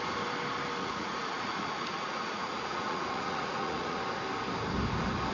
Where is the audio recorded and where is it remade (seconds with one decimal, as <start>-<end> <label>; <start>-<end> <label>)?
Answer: 0.0-0.8 recorded; 0.8-4.0 remade; 4.0-5.3 recorded

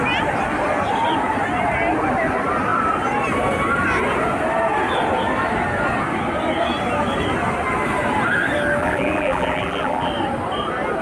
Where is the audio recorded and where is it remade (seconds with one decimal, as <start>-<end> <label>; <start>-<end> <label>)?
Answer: 0.0-8.8 recorded; 8.8-10.1 remade; 10.1-11.0 recorded

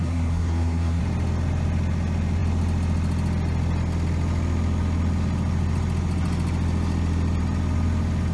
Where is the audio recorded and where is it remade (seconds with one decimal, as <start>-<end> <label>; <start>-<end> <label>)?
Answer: 0.0-1.0 remade; 1.0-8.3 recorded

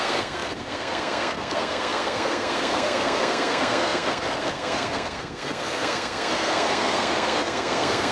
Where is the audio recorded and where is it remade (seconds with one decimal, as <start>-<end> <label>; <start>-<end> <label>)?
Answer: 0.0-8.1 remade

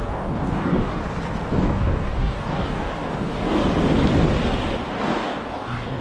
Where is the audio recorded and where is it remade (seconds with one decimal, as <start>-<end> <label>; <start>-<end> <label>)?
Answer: 0.0-1.0 remade; 1.0-1.5 recorded; 1.5-3.6 remade; 3.6-4.9 recorded; 4.9-6.0 remade

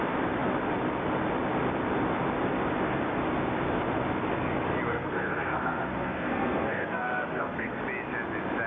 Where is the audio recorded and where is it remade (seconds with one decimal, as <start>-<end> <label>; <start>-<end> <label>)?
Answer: 0.0-4.9 recorded; 4.9-7.8 remade; 7.8-8.7 recorded